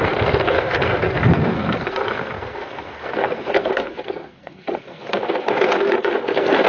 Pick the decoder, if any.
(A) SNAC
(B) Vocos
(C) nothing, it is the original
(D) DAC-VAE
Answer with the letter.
A